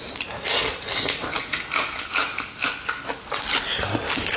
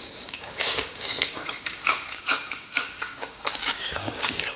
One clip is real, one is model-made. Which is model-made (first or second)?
second